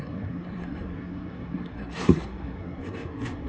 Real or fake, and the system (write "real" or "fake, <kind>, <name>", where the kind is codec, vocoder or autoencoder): fake, codec, SNAC